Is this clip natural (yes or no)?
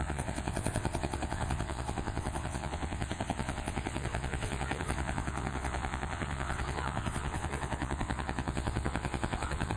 no